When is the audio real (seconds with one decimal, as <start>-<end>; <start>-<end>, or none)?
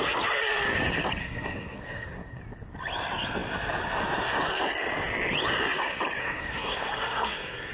0.0-1.2; 2.4-6.2